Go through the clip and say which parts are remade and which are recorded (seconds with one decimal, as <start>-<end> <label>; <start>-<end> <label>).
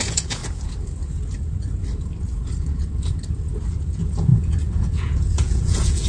0.0-0.4 remade; 0.4-3.9 recorded; 3.9-6.1 remade